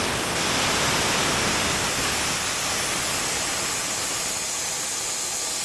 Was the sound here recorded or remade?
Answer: recorded